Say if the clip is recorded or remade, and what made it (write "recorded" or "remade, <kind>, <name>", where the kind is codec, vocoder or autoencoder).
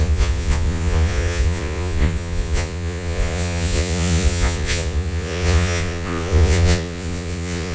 remade, vocoder, Vocos